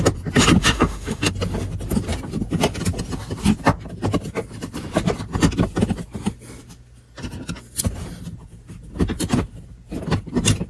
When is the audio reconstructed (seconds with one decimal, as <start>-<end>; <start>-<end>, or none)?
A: 0.6-1.3